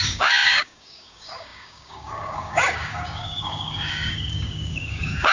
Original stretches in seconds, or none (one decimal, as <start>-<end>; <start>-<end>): none